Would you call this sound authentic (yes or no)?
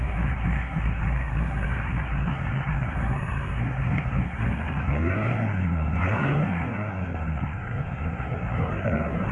no